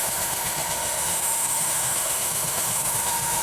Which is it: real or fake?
fake